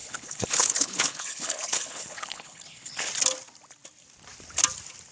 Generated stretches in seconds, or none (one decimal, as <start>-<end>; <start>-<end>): 0.0-3.1